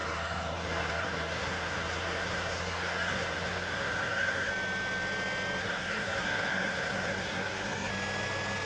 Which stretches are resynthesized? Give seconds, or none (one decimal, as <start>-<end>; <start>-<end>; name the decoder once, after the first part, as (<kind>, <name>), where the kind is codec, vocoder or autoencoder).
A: 0.0-4.5 (codec, SNAC); 5.6-7.9